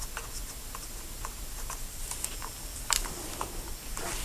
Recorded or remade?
recorded